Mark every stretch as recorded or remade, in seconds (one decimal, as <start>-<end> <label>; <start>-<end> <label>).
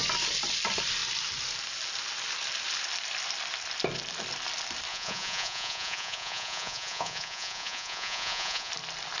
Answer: 0.0-4.9 recorded; 4.9-8.7 remade; 8.7-9.2 recorded